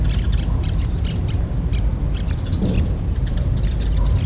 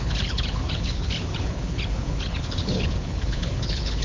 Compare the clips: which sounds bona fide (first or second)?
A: first